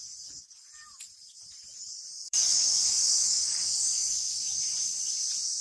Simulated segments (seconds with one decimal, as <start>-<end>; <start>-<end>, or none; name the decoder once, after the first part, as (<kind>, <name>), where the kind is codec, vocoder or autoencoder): 2.2-4.6 (codec, DAC)